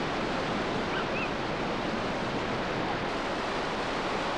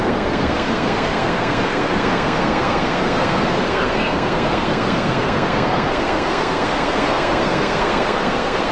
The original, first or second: first